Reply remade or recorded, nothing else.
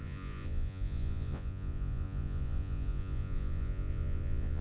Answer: remade